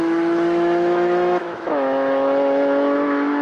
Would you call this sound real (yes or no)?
no